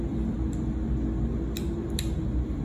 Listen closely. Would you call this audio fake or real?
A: real